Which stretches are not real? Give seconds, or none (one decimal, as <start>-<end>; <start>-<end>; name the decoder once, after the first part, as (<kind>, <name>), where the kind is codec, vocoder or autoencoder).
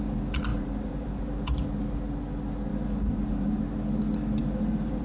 0.5-1.2 (vocoder, BigVGAN v2); 2.7-3.6; 4.4-5.0